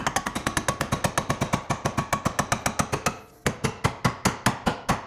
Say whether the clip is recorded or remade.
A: recorded